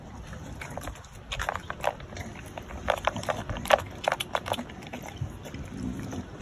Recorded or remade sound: remade